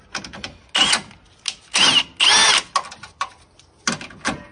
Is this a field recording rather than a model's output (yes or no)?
yes